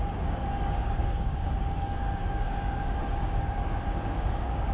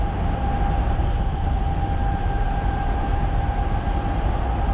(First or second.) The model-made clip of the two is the first